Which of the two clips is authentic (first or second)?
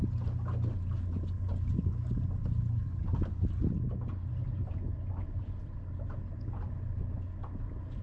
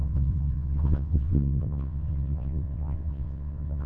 first